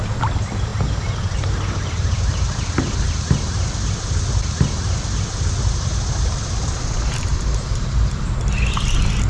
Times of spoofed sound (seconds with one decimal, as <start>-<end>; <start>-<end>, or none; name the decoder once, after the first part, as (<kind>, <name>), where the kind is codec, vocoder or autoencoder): none